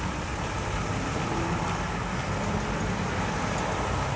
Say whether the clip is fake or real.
real